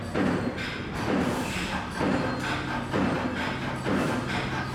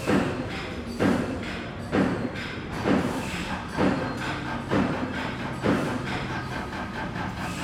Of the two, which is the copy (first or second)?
second